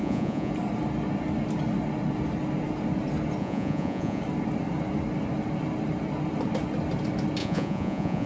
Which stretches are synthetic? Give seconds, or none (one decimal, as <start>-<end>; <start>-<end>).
0.0-0.5; 3.4-4.2; 7.4-8.3